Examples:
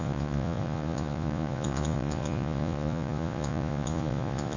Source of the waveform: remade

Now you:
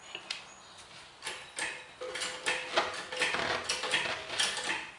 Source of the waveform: recorded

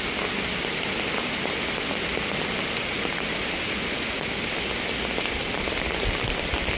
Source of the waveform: recorded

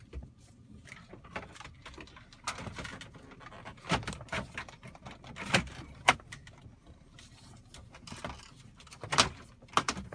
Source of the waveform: recorded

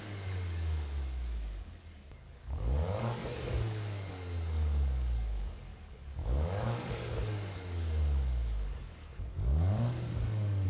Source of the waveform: remade